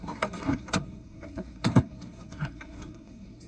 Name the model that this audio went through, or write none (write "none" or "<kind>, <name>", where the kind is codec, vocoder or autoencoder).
codec, SNAC